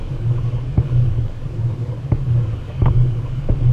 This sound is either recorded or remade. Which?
remade